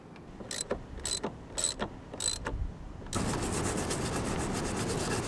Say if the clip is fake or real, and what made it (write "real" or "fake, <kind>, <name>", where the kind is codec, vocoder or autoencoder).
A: real